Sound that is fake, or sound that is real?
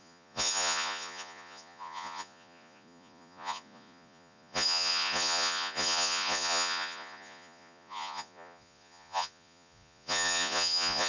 fake